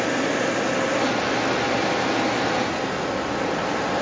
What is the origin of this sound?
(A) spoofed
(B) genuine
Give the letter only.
B